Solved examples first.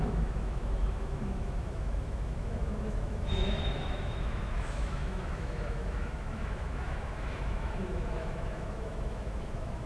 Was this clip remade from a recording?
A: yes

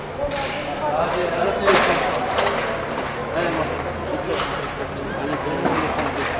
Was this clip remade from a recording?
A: no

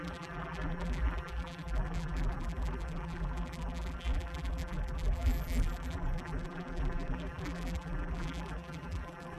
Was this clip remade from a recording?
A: yes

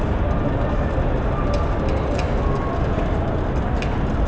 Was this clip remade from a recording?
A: no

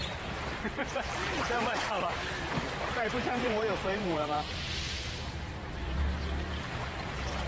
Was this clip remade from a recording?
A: yes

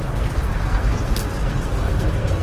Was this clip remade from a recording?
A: yes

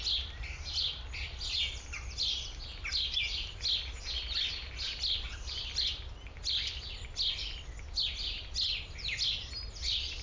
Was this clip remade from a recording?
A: no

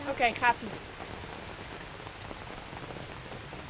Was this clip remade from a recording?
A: no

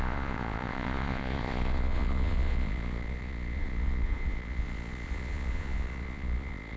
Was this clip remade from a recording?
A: yes